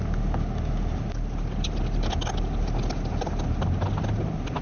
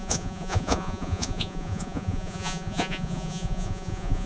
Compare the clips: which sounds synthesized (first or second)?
second